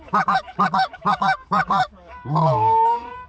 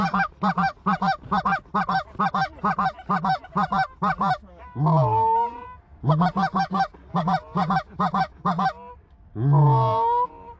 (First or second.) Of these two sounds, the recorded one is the second